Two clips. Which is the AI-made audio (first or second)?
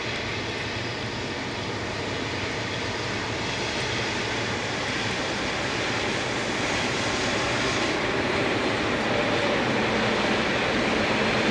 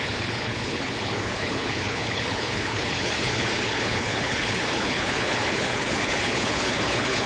second